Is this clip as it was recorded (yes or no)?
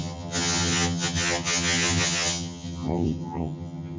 no